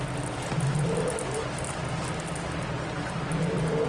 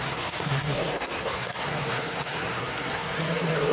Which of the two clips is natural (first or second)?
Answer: first